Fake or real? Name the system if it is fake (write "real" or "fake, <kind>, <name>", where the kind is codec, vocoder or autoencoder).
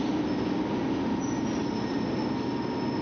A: real